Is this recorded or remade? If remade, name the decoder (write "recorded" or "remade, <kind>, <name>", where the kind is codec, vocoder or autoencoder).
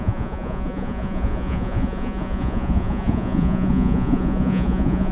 remade, vocoder, Vocos